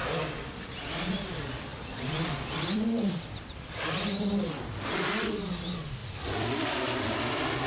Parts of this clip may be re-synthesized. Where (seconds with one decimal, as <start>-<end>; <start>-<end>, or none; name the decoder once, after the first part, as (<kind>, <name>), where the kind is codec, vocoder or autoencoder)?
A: 0.6-7.7 (vocoder, BigVGAN v2)